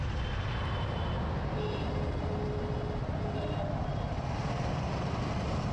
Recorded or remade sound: recorded